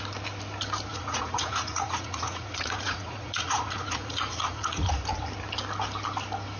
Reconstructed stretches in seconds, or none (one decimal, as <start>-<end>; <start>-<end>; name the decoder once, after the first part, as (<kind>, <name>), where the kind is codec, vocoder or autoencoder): 0.9-4.9 (vocoder, Vocos)